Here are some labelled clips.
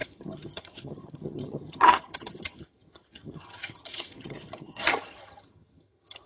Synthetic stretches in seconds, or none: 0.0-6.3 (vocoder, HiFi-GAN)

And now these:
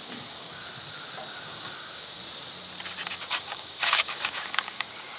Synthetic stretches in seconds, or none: 0.0-0.6 (codec, DAC); 1.4-2.2; 3.1-5.2

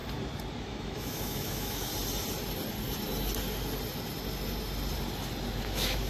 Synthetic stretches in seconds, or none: 0.6-1.9 (autoencoder, DAC-VAE); 5.6-6.1

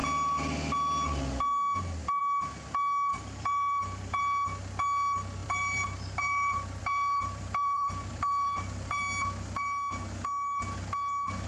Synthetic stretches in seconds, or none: 3.1-4.2 (vocoder, BigVGAN v2); 5.4-9.0